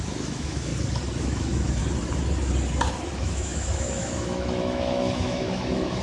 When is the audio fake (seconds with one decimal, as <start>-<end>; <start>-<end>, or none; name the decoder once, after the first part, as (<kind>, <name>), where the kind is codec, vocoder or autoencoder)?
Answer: 0.0-0.7 (autoencoder, DAC-VAE); 1.2-1.8; 3.1-6.0